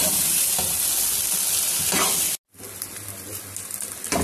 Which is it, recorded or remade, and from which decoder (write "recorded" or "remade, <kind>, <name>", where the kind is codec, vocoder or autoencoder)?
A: recorded